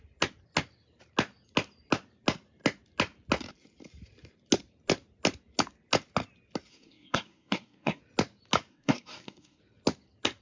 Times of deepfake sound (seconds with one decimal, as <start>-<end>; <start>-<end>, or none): 6.7-8.0; 8.7-9.6